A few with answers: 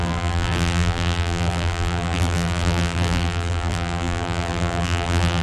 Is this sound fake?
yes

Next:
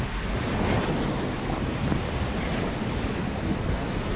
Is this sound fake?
no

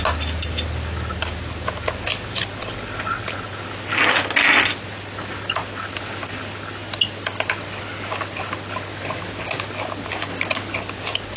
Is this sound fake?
no